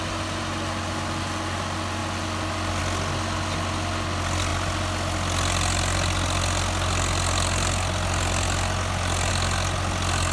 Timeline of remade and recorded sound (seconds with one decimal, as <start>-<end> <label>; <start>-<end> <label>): 0.0-10.3 recorded